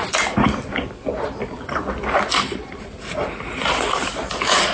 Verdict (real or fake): fake